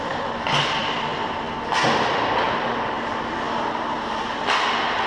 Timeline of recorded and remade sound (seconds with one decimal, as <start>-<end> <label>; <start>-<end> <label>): 0.0-5.1 recorded